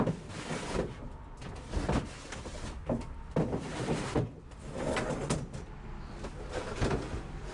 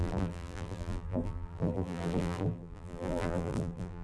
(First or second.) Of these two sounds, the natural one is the first